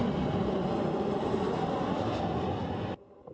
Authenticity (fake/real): real